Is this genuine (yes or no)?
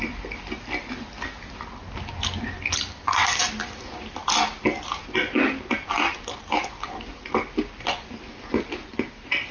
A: yes